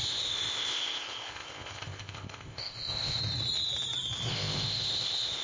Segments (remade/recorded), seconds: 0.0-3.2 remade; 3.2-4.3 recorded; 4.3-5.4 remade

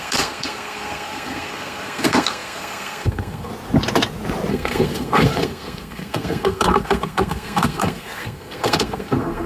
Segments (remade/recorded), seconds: 0.0-3.5 remade; 3.5-4.5 recorded; 4.5-9.5 remade

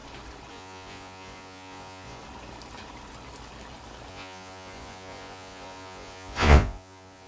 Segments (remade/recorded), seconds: 0.0-0.5 recorded; 0.5-2.2 remade; 2.2-4.1 recorded; 4.1-7.3 remade

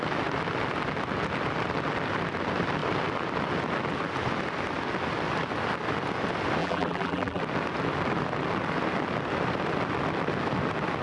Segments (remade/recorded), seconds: 0.0-6.6 recorded; 6.6-7.4 remade; 7.4-11.0 recorded

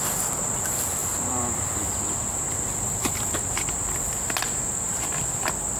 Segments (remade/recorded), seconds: 0.0-1.0 recorded; 1.0-3.1 remade; 3.1-5.8 recorded

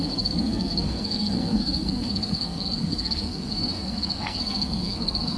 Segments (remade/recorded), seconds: 0.0-5.4 remade

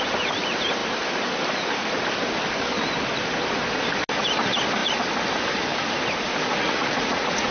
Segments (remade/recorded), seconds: 0.0-6.6 recorded; 6.6-7.5 remade

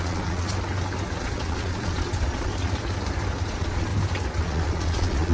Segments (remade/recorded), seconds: 0.0-0.5 remade; 0.5-1.2 recorded; 1.2-2.5 remade; 2.5-3.5 recorded; 3.5-3.9 remade; 3.9-4.4 recorded; 4.4-5.3 remade